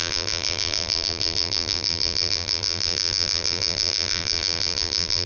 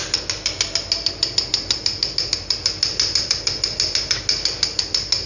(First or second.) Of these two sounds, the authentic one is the second